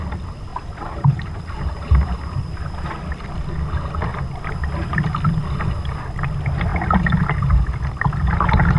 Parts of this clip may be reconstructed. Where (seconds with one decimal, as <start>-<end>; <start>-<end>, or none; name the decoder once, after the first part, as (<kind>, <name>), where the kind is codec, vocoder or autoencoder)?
0.5-1.8 (vocoder, BigVGAN v2)

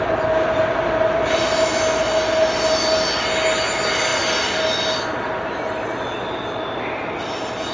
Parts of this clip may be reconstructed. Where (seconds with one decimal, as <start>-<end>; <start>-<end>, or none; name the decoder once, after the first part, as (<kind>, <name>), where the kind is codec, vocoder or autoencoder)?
none

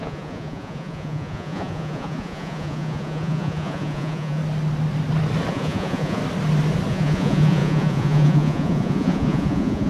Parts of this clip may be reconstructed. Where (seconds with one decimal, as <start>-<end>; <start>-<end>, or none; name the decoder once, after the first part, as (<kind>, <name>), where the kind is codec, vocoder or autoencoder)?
0.0-4.4 (vocoder, Vocos); 5.5-6.2; 6.9-9.9